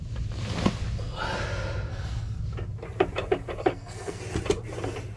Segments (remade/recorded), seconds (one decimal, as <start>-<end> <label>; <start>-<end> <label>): 0.0-1.9 recorded; 1.9-2.4 remade; 2.4-3.7 recorded; 3.7-4.2 remade; 4.2-5.2 recorded